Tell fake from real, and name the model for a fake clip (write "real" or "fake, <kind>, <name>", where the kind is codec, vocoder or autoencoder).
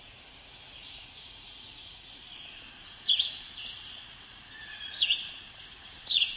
fake, vocoder, Vocos